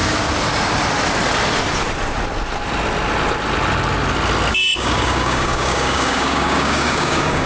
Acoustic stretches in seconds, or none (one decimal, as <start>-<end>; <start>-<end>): 0.0-4.5